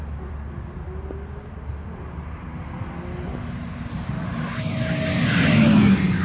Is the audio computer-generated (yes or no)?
no